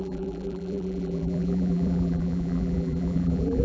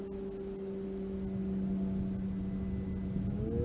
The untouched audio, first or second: second